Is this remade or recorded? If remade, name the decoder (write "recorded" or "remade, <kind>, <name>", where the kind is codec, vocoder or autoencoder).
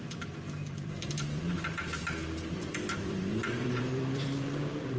remade, vocoder, BigVGAN v2